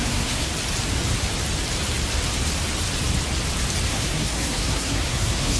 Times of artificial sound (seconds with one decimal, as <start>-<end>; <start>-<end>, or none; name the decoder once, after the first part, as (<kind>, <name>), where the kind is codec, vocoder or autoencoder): 0.0-0.5 (codec, SNAC); 3.9-5.6